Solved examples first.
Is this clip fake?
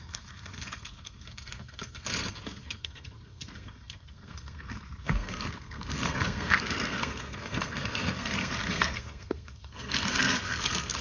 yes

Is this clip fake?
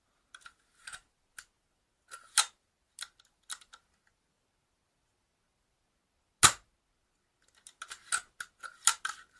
no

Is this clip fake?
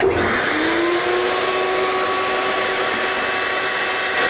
no